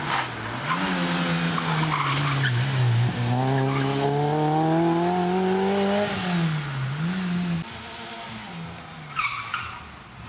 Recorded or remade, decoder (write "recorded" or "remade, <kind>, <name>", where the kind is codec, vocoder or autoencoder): recorded